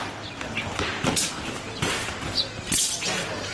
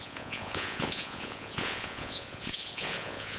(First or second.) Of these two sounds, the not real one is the second